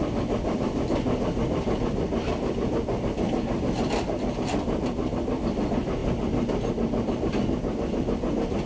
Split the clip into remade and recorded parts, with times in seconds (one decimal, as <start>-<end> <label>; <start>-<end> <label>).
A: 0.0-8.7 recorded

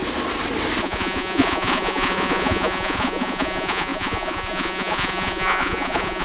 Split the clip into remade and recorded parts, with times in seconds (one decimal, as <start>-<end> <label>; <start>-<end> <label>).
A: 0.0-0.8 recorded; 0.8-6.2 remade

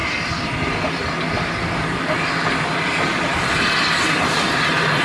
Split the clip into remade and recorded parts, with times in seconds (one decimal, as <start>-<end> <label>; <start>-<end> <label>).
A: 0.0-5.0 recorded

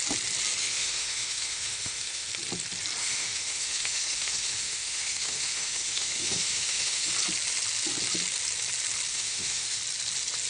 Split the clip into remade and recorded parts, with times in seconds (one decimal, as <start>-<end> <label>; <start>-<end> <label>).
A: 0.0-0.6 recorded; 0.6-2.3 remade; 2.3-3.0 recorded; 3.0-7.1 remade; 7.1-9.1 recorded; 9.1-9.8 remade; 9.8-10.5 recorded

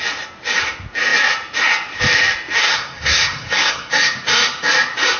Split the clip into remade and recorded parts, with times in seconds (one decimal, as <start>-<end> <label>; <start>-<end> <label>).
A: 0.0-2.6 recorded; 2.6-3.9 remade; 3.9-5.2 recorded